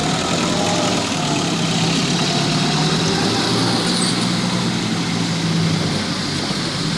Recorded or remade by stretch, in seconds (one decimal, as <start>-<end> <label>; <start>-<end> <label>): 0.0-0.6 remade; 0.6-7.0 recorded